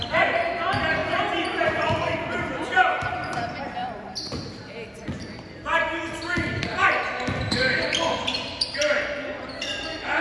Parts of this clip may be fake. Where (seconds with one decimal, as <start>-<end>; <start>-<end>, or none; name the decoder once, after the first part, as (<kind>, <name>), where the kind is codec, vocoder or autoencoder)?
none